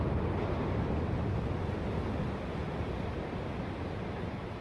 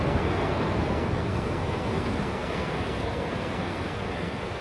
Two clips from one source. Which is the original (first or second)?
first